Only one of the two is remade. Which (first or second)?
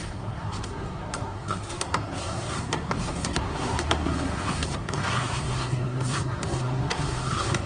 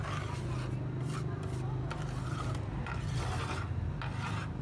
first